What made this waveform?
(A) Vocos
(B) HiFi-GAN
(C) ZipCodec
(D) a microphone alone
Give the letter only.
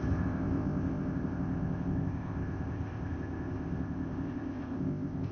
C